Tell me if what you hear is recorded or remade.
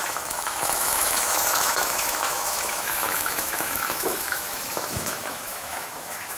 remade